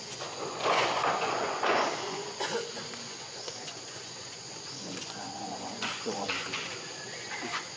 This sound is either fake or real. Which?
fake